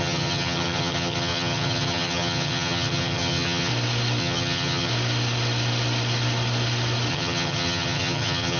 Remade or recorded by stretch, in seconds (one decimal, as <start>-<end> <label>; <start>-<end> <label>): 0.0-3.7 remade; 3.7-4.2 recorded; 4.2-4.9 remade; 4.9-7.1 recorded; 7.1-8.6 remade